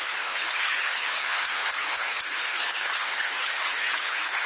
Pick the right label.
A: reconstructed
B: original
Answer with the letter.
A